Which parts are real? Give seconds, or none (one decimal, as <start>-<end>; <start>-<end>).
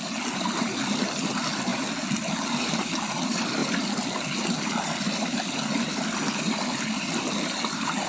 0.0-8.1